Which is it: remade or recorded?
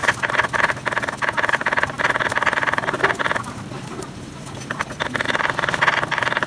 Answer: recorded